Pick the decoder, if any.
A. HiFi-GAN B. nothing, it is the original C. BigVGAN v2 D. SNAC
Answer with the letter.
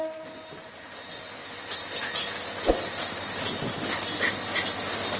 B